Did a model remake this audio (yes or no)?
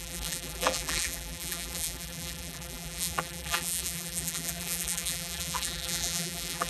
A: yes